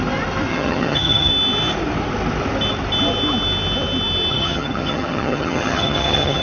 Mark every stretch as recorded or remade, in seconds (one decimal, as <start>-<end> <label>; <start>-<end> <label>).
0.0-0.5 recorded; 0.5-1.3 remade; 1.3-4.3 recorded; 4.3-6.4 remade